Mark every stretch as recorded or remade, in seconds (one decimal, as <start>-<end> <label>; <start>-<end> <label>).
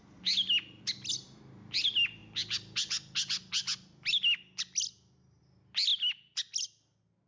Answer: 0.0-7.3 recorded